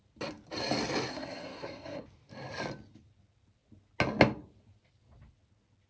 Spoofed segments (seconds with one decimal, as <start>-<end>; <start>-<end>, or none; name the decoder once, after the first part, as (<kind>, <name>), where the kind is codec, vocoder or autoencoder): 1.1-2.0 (codec, SNAC)